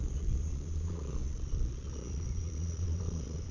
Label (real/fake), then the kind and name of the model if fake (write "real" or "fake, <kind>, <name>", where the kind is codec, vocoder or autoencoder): fake, vocoder, Vocos